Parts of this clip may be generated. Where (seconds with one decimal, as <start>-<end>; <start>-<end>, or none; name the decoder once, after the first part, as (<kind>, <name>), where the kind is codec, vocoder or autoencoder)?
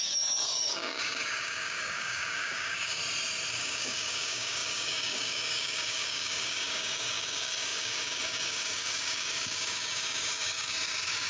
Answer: 0.0-3.0 (codec, DAC); 3.5-11.3